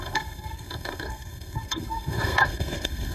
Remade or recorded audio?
remade